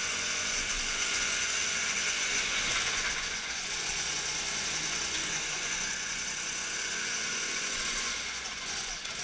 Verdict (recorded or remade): remade